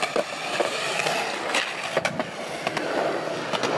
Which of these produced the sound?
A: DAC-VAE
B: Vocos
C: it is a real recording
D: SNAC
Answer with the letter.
C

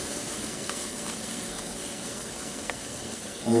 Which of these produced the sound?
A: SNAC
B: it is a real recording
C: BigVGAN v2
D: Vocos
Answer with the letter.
A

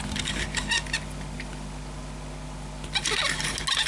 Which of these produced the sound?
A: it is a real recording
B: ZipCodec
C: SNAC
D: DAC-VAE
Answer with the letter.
A